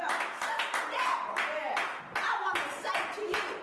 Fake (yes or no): no